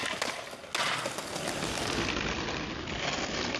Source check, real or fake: real